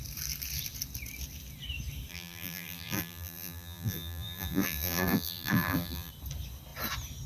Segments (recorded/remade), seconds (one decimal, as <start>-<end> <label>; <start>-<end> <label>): 0.0-2.1 recorded; 2.1-6.1 remade; 6.1-7.3 recorded